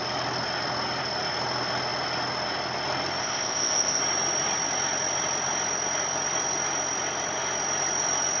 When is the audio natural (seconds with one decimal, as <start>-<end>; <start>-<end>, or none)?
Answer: 0.0-3.2; 4.0-8.4